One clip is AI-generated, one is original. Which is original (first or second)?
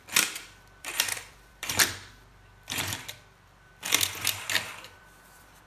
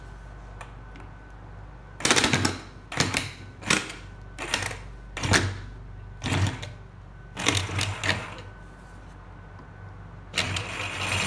second